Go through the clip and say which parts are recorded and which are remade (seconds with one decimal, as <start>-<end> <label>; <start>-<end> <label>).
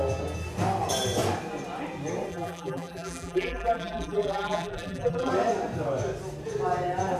0.0-2.3 recorded; 2.3-5.3 remade; 5.3-7.2 recorded